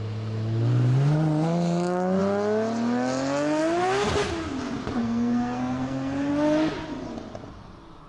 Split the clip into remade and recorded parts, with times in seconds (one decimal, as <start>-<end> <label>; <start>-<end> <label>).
0.0-5.0 recorded; 5.0-6.3 remade; 6.3-8.1 recorded